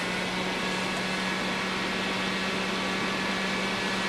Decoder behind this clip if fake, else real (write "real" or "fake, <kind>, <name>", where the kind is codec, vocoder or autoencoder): real